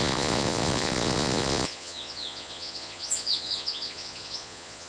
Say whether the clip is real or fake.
fake